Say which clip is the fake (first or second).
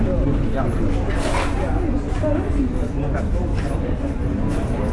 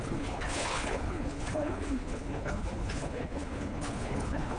second